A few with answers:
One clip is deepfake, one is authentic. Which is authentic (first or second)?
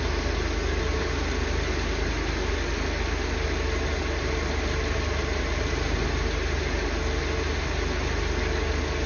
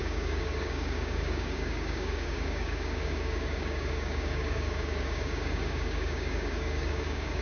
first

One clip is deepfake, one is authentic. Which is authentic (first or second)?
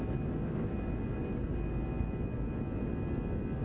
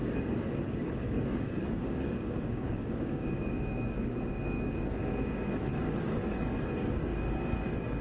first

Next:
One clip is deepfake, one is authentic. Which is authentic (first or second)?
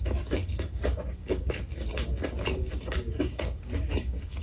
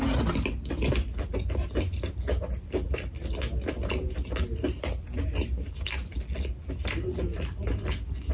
second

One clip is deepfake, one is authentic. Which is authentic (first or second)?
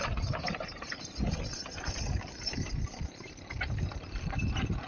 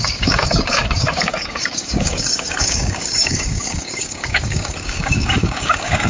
first